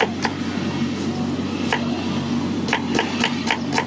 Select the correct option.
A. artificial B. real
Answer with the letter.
B